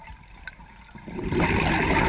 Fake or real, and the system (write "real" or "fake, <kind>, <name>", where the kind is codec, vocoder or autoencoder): real